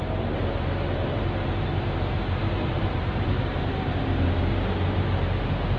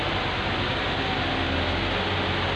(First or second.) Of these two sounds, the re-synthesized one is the first